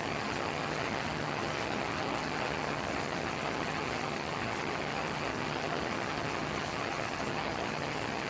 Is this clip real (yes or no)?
no